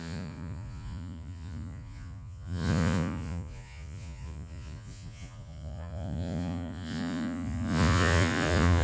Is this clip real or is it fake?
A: fake